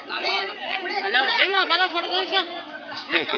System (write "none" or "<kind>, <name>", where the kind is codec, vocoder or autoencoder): vocoder, WaveNeXt